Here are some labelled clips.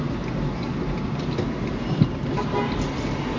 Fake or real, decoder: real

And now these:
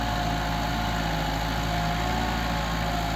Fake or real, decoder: real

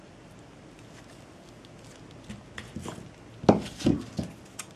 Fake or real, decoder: real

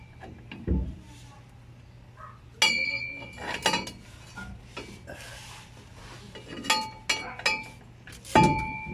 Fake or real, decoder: real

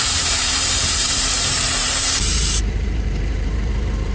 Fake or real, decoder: fake, vocoder, BigVGAN v2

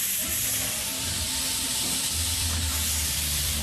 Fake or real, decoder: fake, vocoder, BigVGAN v2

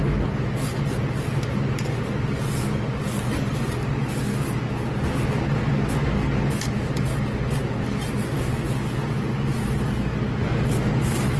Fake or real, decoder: real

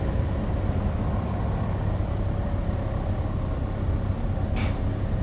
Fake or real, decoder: real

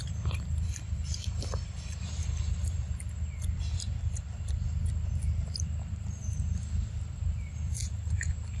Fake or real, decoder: fake, vocoder, BigVGAN v2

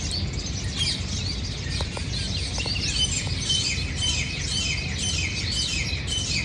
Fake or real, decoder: real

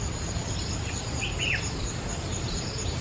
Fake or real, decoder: real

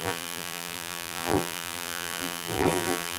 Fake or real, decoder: fake, vocoder, BigVGAN v2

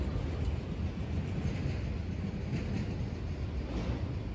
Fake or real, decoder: real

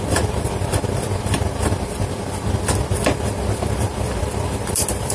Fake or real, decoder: fake, vocoder, BigVGAN v2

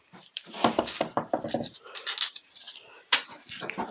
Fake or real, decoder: fake, vocoder, BigVGAN v2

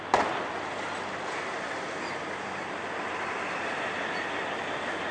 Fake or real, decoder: fake, vocoder, BigVGAN v2